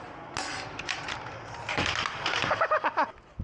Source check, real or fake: real